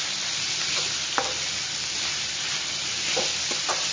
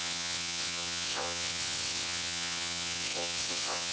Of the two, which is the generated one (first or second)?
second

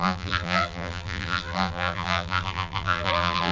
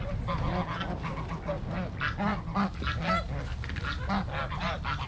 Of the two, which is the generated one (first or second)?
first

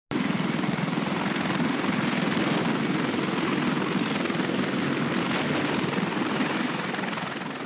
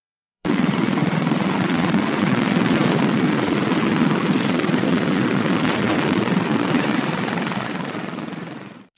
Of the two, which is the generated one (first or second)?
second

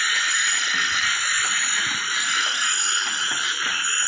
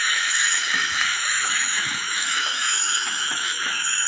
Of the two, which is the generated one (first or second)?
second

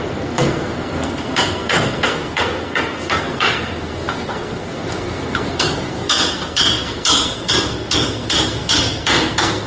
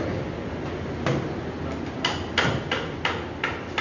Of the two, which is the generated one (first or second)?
first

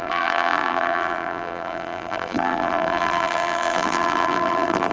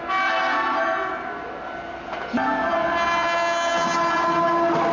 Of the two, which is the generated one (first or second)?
first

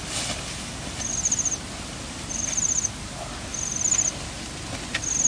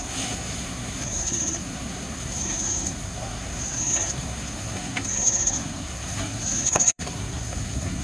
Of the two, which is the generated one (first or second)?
second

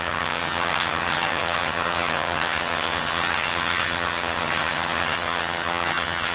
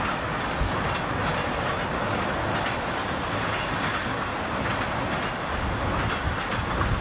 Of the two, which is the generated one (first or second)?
first